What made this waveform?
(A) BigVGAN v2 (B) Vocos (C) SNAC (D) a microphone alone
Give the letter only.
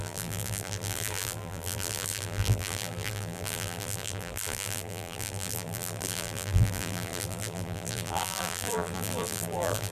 A